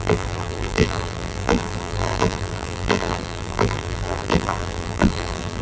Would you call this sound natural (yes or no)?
no